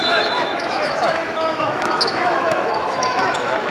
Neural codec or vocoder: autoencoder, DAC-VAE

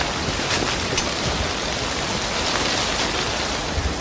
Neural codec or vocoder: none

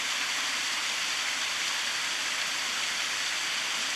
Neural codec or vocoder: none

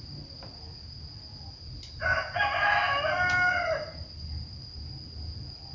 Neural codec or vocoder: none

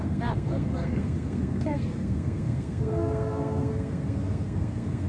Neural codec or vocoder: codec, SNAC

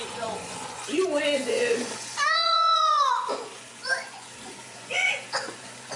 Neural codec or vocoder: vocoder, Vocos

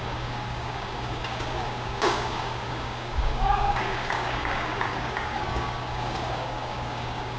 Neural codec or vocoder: codec, DAC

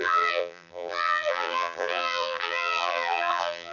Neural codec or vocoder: vocoder, BigVGAN v2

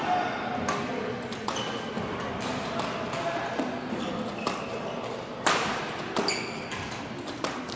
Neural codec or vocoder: none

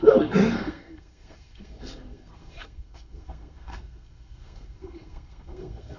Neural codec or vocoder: codec, SNAC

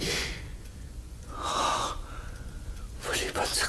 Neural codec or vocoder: vocoder, Vocos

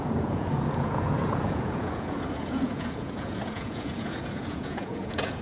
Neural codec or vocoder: vocoder, Vocos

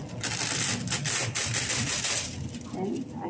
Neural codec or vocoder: none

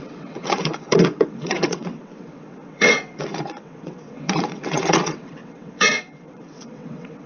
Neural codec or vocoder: vocoder, WaveNeXt